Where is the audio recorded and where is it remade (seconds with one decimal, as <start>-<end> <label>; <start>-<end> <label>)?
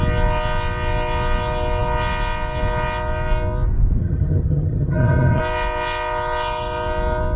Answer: 0.0-4.0 recorded; 4.0-5.4 remade; 5.4-7.4 recorded